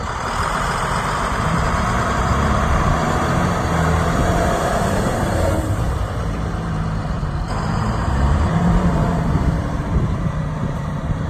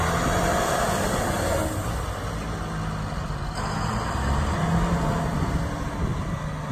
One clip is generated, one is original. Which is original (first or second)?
second